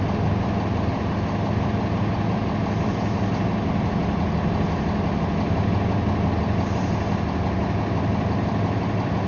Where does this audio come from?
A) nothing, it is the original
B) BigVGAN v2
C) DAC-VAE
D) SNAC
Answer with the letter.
A